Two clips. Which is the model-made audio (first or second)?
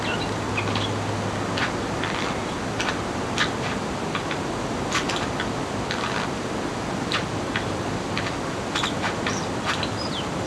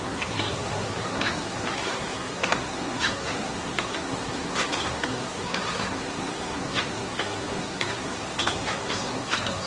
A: second